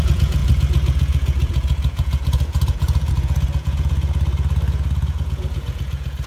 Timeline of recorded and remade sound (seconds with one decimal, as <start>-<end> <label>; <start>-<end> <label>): 0.0-6.3 remade